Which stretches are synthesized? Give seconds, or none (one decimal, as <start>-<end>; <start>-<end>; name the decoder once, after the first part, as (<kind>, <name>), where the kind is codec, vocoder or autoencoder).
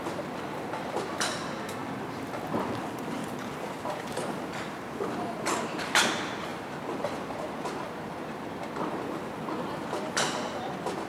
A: 6.5-8.4 (vocoder, BigVGAN v2)